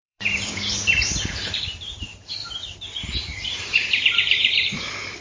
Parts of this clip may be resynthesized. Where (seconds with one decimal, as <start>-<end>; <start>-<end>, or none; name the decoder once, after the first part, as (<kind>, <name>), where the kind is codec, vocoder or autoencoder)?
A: 0.0-5.2 (vocoder, BigVGAN v2)